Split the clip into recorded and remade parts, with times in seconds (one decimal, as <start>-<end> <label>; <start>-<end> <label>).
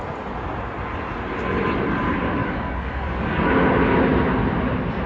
0.0-2.4 recorded; 2.4-3.5 remade; 3.5-5.1 recorded